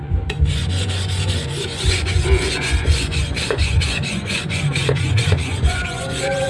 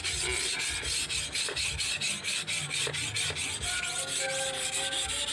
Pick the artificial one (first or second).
first